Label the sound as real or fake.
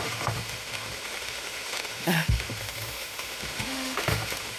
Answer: fake